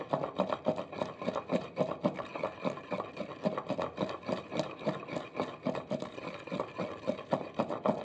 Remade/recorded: recorded